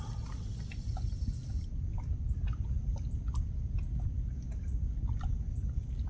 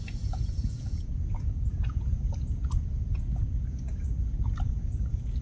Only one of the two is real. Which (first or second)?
first